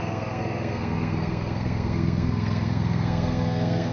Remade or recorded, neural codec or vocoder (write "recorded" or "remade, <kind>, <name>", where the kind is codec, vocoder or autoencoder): remade, codec, SNAC